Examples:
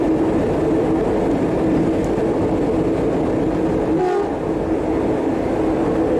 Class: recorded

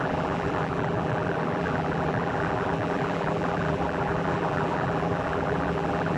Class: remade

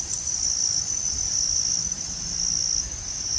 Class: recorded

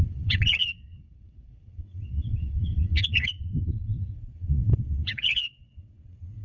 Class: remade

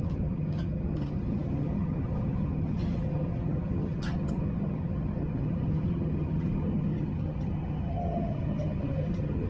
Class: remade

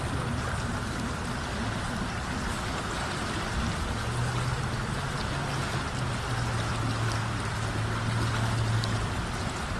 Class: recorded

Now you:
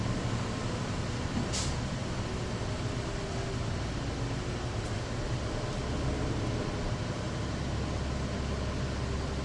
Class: recorded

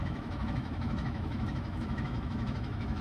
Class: remade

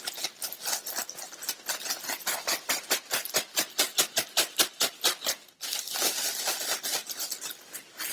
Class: recorded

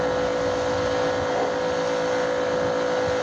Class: recorded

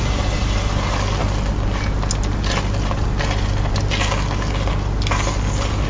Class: recorded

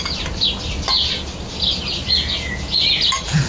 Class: recorded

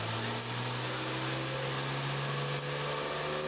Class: recorded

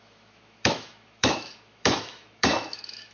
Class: remade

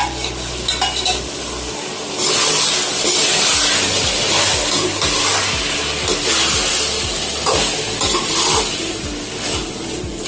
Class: recorded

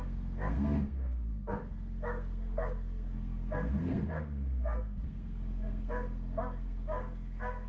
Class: remade